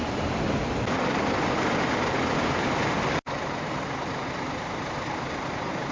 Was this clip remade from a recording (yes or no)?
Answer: no